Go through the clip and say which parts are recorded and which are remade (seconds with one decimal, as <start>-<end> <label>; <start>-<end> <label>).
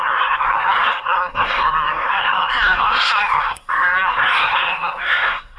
0.0-5.6 remade